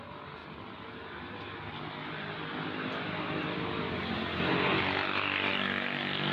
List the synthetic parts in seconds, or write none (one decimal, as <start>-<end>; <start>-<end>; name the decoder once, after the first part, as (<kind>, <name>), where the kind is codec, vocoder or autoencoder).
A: none